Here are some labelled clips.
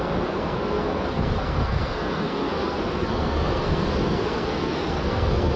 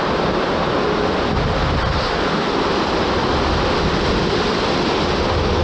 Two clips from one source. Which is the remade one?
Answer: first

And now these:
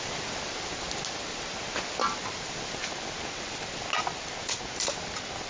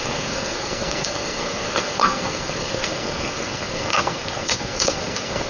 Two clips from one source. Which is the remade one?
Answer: second